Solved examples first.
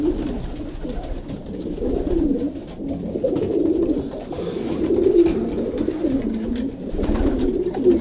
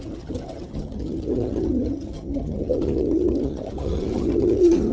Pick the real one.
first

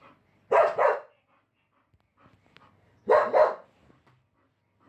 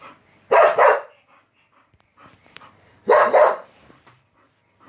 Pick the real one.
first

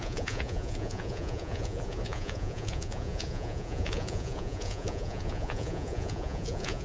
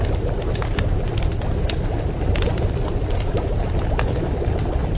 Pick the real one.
second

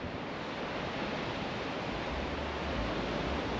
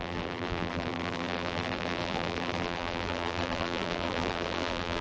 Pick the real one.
first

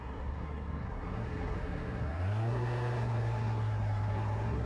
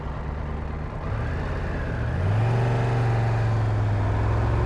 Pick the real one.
second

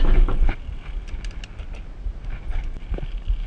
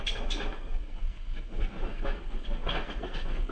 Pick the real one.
first